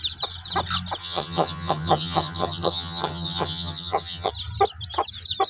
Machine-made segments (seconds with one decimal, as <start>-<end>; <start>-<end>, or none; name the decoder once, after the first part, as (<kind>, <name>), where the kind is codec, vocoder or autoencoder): 1.0-4.3 (vocoder, HiFi-GAN)

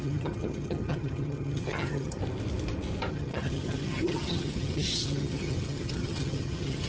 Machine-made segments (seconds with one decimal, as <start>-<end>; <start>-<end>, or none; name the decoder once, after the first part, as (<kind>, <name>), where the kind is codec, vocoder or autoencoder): 0.0-2.2 (vocoder, HiFi-GAN); 3.1-6.9

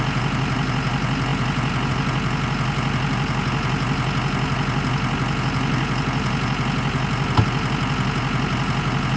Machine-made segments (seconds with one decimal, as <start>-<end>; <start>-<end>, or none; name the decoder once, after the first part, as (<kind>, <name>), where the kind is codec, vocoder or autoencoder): none

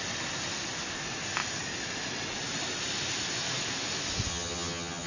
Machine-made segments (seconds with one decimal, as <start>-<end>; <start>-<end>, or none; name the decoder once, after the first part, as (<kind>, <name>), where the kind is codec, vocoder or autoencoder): 4.3-5.1 (vocoder, HiFi-GAN)